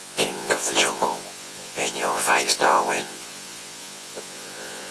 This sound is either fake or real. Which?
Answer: fake